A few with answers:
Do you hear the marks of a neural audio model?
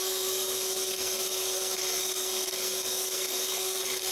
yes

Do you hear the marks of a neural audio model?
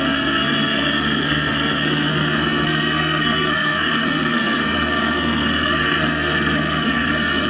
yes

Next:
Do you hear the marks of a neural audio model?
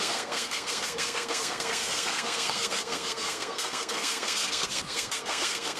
yes